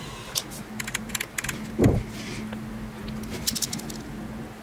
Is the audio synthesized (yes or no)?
no